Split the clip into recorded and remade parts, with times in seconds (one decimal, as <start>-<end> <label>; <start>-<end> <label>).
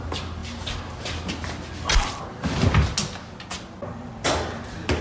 0.0-5.0 recorded